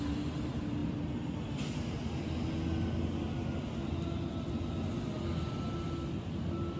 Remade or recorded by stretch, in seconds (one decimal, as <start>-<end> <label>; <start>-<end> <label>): 0.0-0.8 recorded; 0.8-1.8 remade; 1.8-6.8 recorded